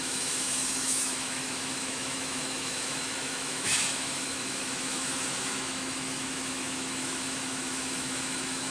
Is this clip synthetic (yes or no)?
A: yes